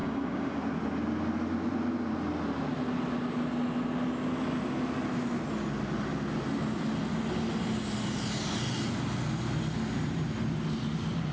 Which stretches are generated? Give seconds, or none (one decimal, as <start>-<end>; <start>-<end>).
0.0-0.6